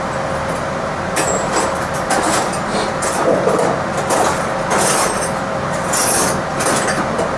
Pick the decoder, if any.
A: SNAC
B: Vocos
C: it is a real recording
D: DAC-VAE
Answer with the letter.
C